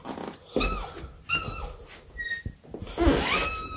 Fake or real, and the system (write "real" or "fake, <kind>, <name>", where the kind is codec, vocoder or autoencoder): real